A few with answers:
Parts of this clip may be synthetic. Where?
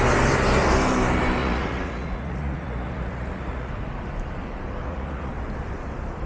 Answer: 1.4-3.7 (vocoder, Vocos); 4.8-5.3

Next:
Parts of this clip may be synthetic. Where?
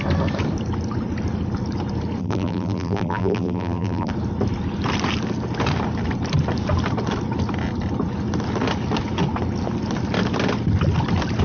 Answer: 2.2-4.1 (vocoder, BigVGAN v2)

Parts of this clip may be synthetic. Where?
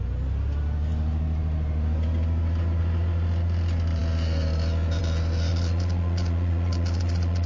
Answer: 5.5-7.5 (vocoder, Vocos)